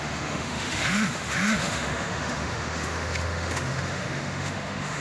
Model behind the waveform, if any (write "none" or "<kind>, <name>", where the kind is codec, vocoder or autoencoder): autoencoder, DAC-VAE